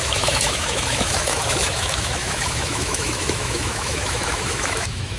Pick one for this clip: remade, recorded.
remade